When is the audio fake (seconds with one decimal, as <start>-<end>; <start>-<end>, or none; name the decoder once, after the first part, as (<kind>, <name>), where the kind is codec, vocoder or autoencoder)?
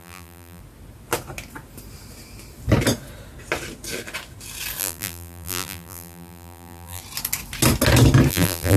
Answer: 0.0-0.6 (vocoder, BigVGAN v2); 4.8-7.0; 8.3-8.8